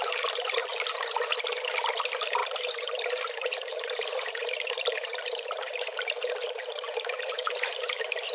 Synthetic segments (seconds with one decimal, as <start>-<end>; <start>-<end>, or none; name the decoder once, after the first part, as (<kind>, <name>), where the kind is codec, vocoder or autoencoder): 0.0-0.6 (vocoder, BigVGAN v2); 1.9-8.3